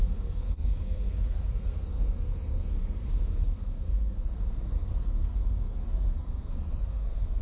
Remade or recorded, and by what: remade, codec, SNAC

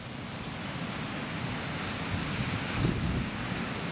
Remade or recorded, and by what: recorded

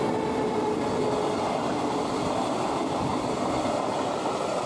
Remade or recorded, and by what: recorded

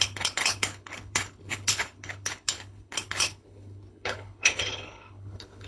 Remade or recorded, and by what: remade, codec, HILCodec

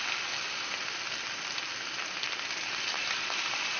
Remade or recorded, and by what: recorded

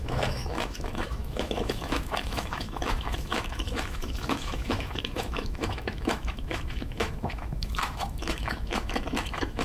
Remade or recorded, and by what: remade, autoencoder, DAC-VAE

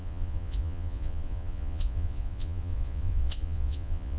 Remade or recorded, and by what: remade, vocoder, Vocos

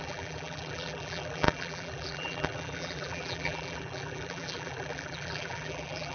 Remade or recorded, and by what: remade, vocoder, BigVGAN v2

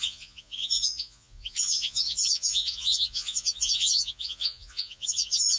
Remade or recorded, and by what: remade, vocoder, Vocos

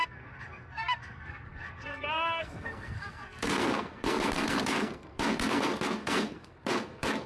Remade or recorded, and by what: remade, codec, SNAC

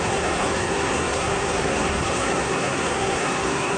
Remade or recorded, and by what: remade, codec, SNAC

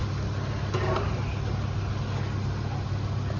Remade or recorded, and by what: recorded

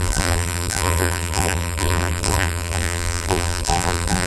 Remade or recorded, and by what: remade, vocoder, BigVGAN v2